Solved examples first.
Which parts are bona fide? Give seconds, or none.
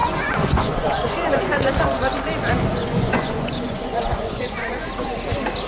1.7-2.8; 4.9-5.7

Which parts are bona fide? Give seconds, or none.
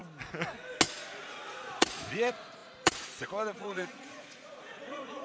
0.0-1.2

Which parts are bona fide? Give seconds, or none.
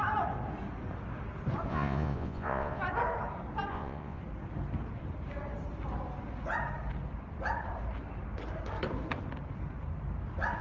0.0-1.7; 2.8-3.7; 4.2-10.6